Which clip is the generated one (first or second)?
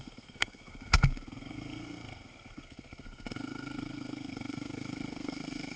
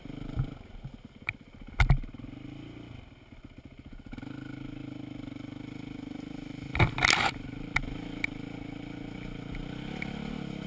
first